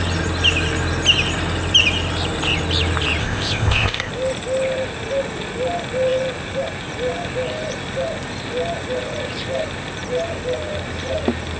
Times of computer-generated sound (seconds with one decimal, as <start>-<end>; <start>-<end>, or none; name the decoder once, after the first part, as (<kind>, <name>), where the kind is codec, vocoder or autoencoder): 3.2-4.1 (codec, ZipCodec)